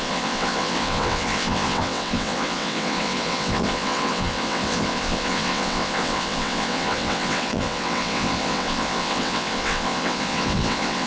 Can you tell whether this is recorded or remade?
remade